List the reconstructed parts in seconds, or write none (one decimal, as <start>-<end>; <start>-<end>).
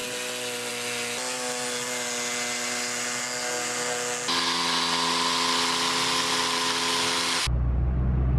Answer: none